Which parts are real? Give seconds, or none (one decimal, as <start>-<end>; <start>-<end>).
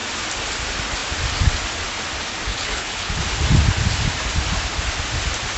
0.0-2.5; 3.2-5.6